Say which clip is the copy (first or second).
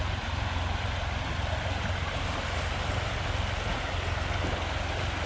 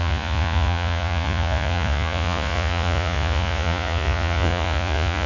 second